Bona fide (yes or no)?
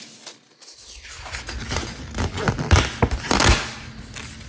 yes